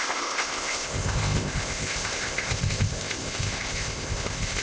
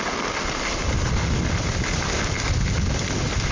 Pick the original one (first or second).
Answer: second